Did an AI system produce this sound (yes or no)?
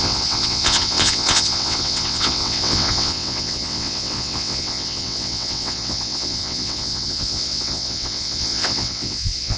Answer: yes